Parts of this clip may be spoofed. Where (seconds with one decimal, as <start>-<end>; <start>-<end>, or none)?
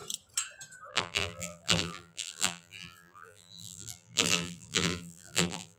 0.9-5.8